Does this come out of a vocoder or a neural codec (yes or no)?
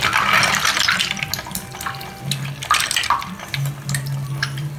no